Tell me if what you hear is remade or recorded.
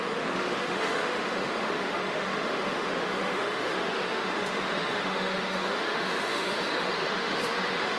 remade